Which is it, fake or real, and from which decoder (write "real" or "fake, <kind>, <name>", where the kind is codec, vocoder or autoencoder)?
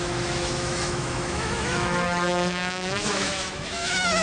fake, autoencoder, DAC-VAE